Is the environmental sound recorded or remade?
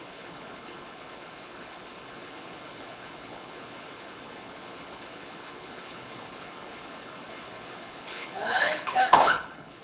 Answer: remade